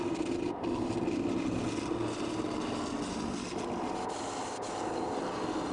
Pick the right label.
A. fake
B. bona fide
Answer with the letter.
B